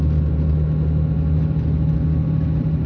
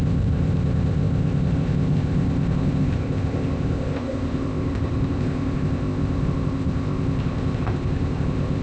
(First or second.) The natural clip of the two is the first